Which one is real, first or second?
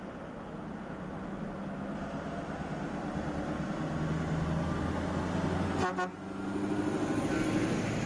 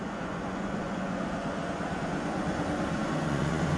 first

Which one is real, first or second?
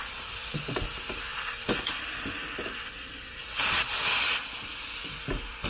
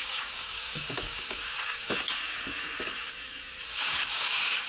first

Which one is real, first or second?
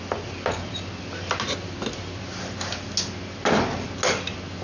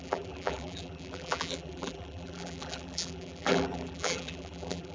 first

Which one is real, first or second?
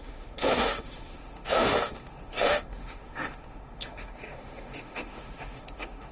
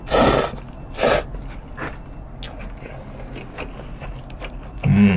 second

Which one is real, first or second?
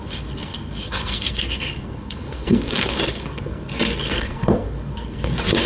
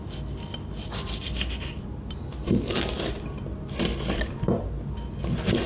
second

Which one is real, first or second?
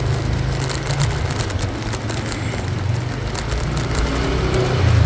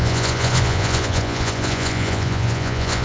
first